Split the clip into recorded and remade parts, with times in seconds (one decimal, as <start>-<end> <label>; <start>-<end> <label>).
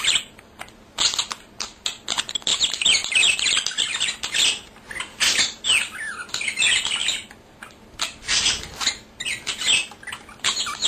0.0-2.5 recorded; 2.5-3.5 remade; 3.5-5.1 recorded; 5.1-5.6 remade; 5.6-10.9 recorded